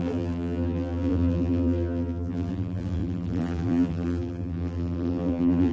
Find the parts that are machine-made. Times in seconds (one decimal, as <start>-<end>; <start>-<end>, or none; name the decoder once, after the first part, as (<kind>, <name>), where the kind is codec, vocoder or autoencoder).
0.0-5.7 (vocoder, BigVGAN v2)